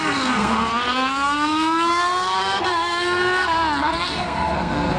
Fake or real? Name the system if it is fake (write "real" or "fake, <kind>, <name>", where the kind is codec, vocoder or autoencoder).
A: fake, codec, SNAC